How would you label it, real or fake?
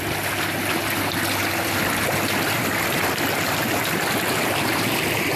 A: real